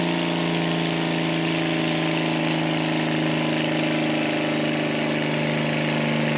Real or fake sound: real